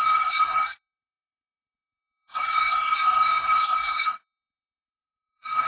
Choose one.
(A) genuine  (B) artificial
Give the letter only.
B